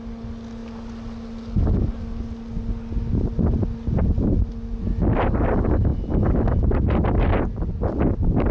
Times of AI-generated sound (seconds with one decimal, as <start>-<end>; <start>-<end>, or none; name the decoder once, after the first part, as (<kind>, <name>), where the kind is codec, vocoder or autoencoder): none